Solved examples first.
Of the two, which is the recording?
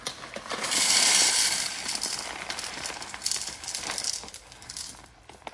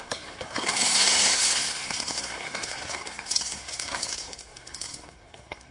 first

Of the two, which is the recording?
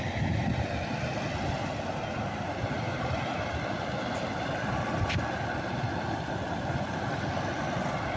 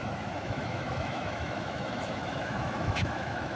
first